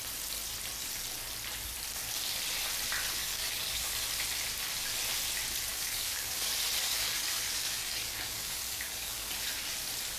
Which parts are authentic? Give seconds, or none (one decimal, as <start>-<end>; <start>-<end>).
0.0-3.2; 3.9-5.7; 6.5-6.9; 9.3-10.2